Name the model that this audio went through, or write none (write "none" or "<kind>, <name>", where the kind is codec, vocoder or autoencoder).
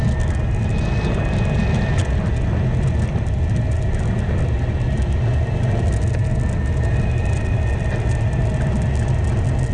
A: none